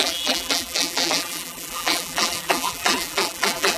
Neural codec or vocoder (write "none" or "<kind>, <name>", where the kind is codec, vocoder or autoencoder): vocoder, BigVGAN v2